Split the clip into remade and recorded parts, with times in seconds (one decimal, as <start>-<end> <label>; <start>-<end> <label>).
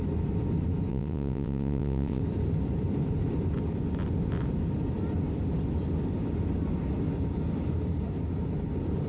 0.0-0.9 recorded; 0.9-2.2 remade; 2.2-9.1 recorded